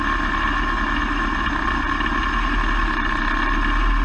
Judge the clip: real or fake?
real